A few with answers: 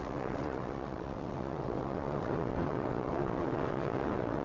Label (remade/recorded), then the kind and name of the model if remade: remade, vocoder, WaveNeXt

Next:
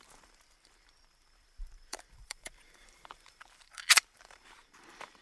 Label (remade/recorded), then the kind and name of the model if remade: remade, vocoder, BigVGAN v2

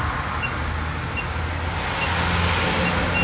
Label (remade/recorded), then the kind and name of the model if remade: recorded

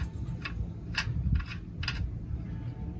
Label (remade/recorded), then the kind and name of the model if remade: recorded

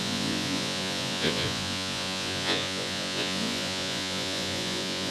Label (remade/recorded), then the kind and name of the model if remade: remade, vocoder, Vocos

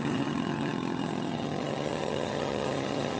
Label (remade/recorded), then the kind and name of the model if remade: remade, vocoder, HiFi-GAN